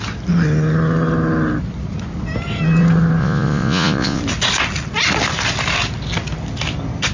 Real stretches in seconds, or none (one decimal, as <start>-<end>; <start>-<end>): 0.0-3.2; 4.2-7.1